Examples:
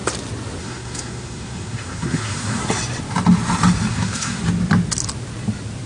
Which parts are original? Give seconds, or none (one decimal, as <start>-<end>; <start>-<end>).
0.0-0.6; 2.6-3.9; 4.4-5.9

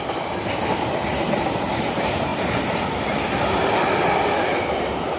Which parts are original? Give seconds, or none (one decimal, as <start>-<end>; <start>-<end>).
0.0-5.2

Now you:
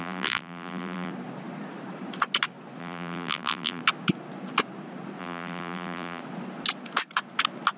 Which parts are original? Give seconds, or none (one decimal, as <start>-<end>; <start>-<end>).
1.1-2.8; 3.8-5.2; 6.2-7.8

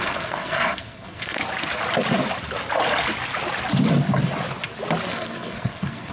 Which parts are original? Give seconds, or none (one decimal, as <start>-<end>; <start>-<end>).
1.4-5.1

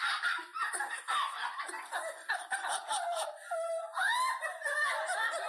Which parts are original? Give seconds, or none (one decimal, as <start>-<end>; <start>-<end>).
0.0-5.5